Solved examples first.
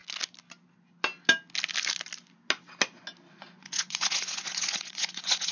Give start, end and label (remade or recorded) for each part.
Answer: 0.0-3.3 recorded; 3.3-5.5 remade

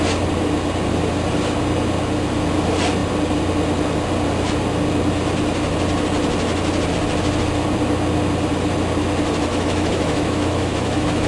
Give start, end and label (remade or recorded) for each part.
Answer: 0.0-9.5 recorded; 9.5-11.3 remade